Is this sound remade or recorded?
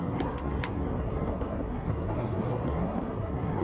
remade